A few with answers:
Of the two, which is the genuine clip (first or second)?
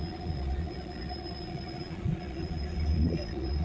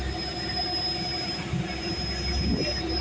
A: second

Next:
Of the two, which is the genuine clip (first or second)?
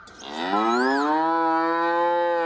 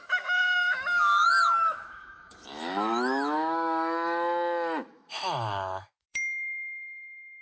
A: first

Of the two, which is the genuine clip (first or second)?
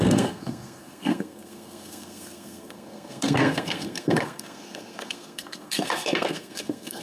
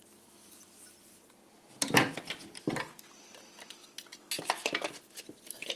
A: second